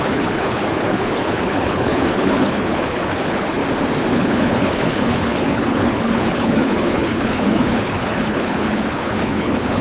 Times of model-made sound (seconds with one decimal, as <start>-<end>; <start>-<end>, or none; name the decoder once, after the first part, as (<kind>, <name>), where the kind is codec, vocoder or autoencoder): 0.0-3.6 (codec, HILCodec); 4.1-9.8